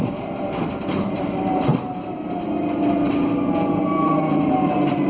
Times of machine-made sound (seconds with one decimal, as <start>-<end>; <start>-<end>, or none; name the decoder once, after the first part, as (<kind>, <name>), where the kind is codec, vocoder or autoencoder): 0.0-1.7 (vocoder, BigVGAN v2); 3.8-5.1